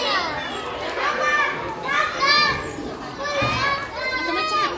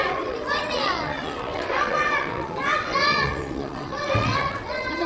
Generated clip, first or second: second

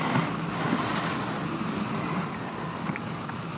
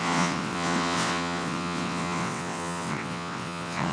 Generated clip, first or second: second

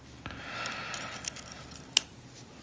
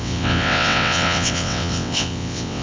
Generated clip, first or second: second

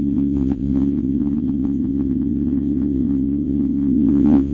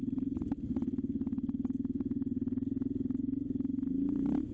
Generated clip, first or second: first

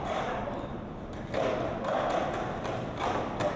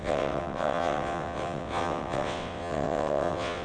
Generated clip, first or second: second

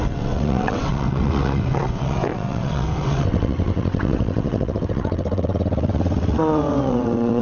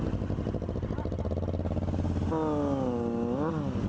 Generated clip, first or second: first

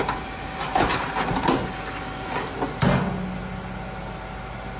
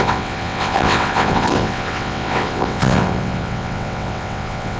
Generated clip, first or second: second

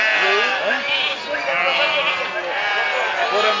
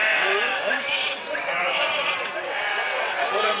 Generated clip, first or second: second